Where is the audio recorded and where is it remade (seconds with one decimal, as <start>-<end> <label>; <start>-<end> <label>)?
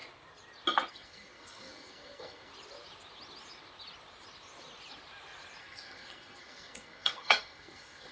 0.0-0.9 recorded; 0.9-2.5 remade; 2.5-5.6 recorded; 5.6-8.1 remade